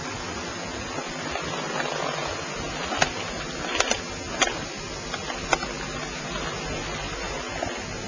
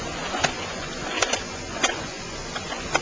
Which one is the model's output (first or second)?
second